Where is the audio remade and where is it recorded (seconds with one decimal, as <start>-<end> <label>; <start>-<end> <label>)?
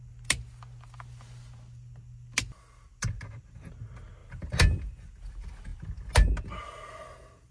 0.0-7.5 recorded